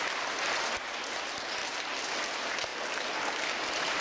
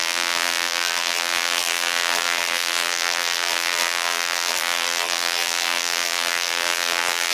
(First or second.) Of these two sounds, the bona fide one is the first